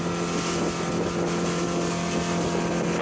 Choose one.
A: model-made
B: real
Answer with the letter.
B